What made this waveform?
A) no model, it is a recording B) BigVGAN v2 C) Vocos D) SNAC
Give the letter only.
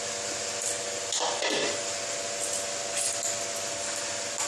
A